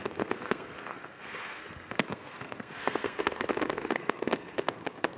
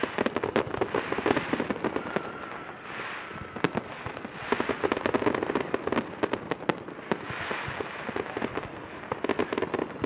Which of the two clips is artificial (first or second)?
first